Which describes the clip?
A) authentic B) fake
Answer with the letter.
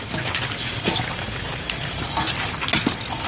A